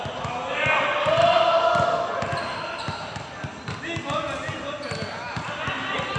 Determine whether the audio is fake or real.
real